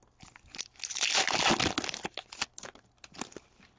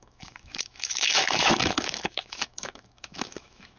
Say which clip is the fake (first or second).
second